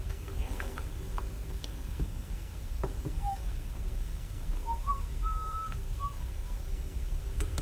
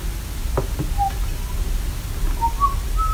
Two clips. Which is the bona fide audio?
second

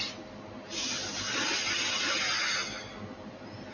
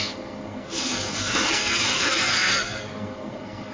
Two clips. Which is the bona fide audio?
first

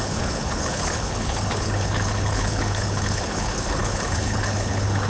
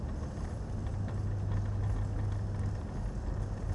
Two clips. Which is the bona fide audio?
second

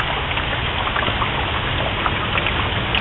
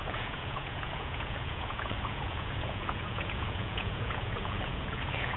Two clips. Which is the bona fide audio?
first